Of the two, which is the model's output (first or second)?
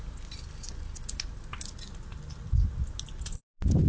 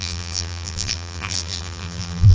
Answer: second